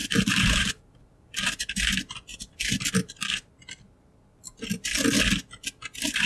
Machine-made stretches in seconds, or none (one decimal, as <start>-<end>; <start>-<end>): 0.0-1.7; 2.3-2.8